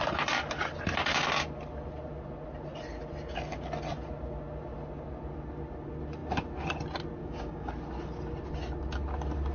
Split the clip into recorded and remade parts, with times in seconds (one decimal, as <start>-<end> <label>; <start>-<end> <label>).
0.0-7.2 recorded; 7.2-7.7 remade; 7.7-9.5 recorded